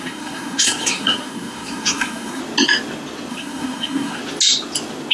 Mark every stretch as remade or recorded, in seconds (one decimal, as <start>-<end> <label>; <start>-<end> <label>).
0.0-2.4 remade; 2.4-3.3 recorded; 3.3-4.2 remade; 4.2-5.1 recorded